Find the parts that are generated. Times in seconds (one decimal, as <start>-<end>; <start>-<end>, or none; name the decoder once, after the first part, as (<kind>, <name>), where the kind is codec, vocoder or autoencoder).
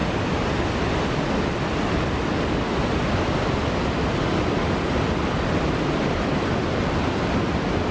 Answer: none